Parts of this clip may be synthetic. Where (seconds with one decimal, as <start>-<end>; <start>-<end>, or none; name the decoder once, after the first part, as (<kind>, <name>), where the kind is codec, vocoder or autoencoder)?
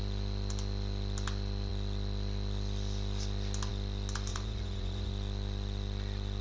4.3-5.1 (vocoder, Vocos)